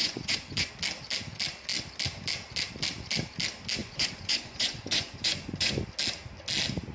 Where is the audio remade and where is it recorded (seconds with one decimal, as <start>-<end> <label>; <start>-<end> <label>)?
0.0-0.7 remade; 0.7-3.8 recorded; 3.8-5.8 remade; 5.8-6.9 recorded